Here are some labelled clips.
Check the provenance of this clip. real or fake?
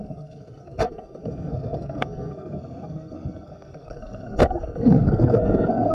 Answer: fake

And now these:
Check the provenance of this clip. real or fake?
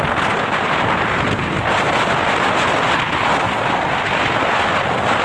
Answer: real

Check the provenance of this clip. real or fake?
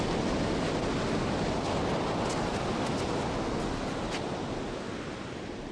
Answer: real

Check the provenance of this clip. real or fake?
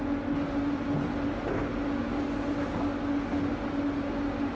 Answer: real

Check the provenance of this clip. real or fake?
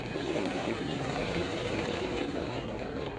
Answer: fake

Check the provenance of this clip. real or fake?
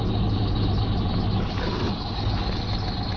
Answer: real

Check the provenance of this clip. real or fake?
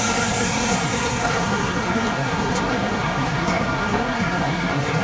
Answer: fake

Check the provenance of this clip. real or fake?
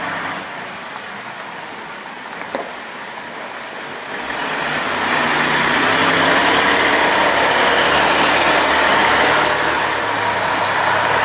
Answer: real